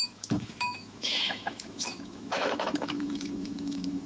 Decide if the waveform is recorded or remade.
remade